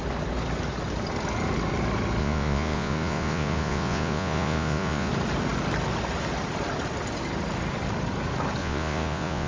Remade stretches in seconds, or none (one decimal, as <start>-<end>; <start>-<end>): 2.2-5.1; 8.6-9.5